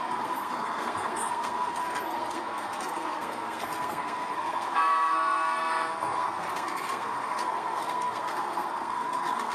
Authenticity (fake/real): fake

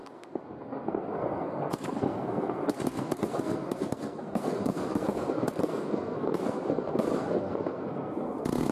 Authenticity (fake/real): fake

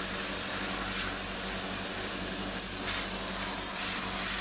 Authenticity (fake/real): real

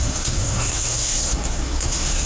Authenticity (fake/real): fake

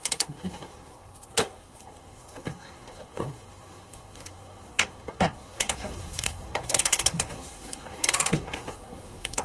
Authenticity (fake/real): fake